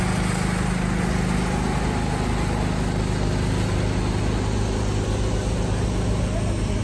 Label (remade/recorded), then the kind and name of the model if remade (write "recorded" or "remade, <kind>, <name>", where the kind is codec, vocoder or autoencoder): recorded